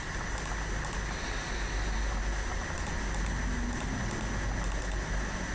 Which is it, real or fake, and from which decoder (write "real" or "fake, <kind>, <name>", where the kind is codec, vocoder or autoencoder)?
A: real